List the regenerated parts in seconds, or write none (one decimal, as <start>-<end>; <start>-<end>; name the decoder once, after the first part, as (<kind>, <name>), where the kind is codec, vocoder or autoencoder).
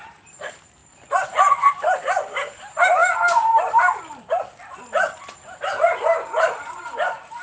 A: 0.0-0.8 (vocoder, BigVGAN v2); 1.7-3.0; 6.4-7.4